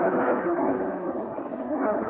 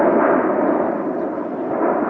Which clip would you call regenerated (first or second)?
first